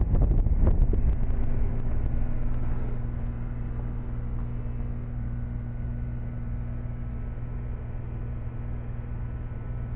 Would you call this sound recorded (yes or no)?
yes